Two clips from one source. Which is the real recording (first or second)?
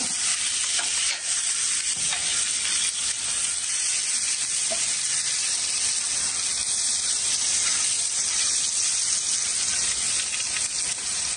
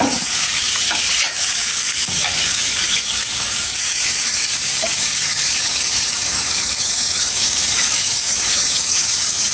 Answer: first